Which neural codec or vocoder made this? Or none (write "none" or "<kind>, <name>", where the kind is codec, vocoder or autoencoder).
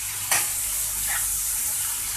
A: none